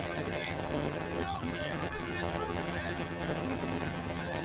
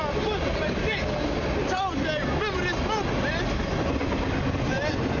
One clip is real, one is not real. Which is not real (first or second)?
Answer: first